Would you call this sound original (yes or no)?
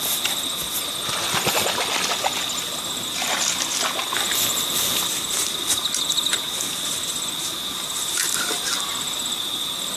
yes